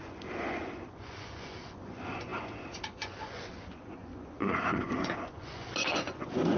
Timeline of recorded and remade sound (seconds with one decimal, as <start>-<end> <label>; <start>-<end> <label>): 0.0-6.6 remade